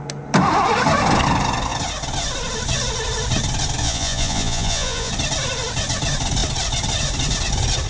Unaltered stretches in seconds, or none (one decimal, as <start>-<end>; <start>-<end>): 0.0-3.8; 5.1-7.9